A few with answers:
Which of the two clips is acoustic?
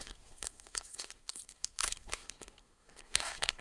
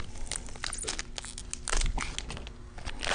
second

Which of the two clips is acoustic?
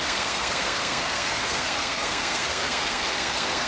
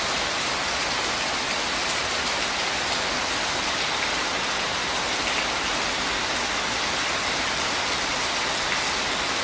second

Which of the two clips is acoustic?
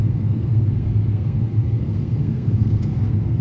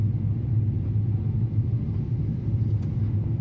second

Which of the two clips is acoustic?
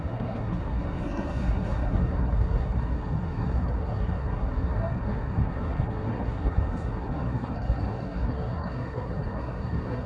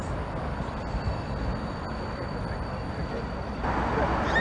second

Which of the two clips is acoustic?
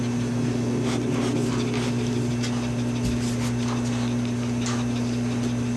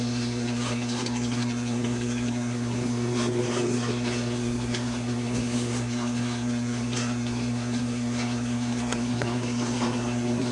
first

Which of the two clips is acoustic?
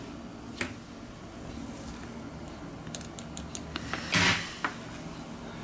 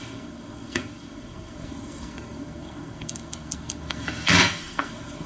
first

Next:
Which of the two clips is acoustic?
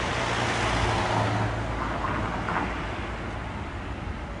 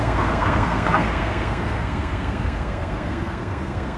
first